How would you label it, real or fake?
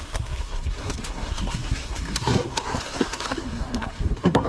fake